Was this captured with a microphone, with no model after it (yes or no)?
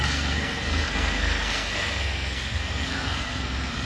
no